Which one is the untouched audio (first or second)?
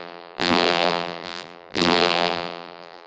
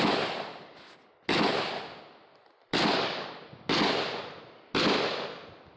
second